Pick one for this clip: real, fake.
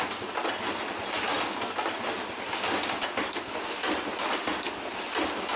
real